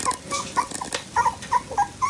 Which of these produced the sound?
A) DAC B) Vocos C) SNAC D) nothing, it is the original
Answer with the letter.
D